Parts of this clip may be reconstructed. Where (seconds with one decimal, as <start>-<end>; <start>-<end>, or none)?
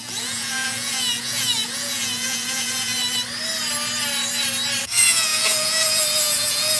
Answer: 0.0-2.9; 4.8-6.8